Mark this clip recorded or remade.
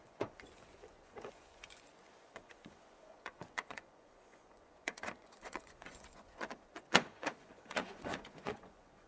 remade